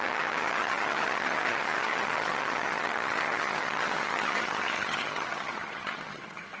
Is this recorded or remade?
remade